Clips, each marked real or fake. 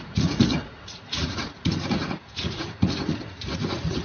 fake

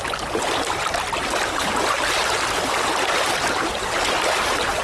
real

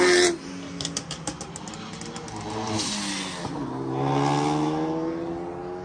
real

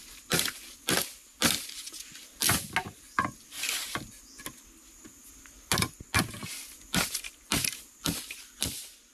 real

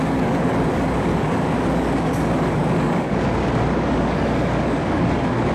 fake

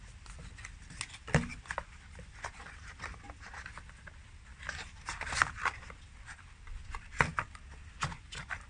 real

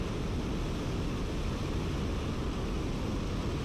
real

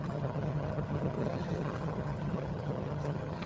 fake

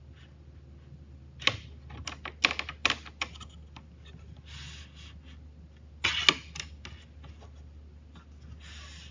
real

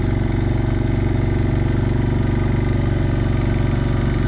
real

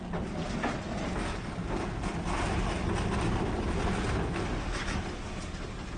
real